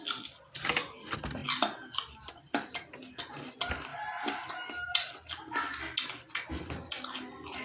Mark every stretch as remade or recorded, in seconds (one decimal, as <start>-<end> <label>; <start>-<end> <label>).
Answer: 0.0-7.6 recorded